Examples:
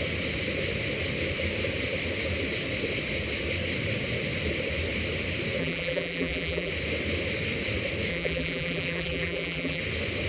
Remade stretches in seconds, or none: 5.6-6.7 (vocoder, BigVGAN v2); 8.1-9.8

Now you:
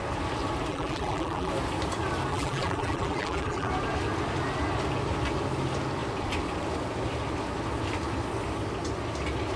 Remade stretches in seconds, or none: 0.7-1.5 (vocoder, BigVGAN v2); 2.3-3.7